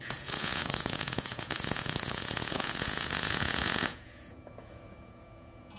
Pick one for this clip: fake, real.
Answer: fake